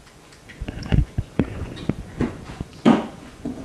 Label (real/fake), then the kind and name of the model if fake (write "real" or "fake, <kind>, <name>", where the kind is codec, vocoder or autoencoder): fake, vocoder, Vocos